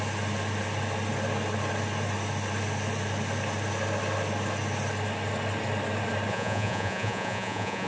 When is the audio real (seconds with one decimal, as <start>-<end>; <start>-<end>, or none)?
0.0-6.3